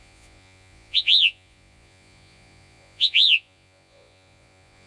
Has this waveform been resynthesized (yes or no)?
yes